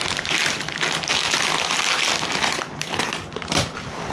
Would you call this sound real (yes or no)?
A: yes